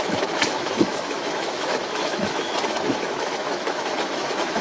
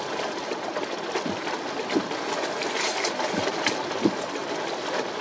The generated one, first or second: first